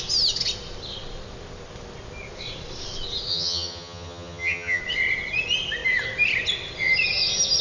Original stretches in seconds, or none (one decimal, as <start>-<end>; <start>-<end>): 0.0-3.3; 4.8-7.6